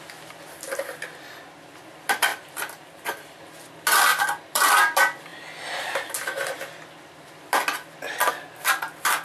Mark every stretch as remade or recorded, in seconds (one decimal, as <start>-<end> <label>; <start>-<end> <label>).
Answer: 0.0-2.3 recorded; 2.3-3.4 remade; 3.4-4.1 recorded; 4.1-4.7 remade; 4.7-9.2 recorded